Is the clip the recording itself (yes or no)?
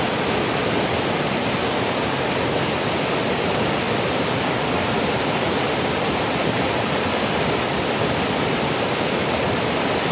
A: yes